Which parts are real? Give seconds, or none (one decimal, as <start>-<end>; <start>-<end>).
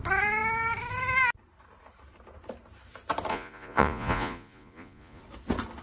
0.0-3.3; 5.2-5.8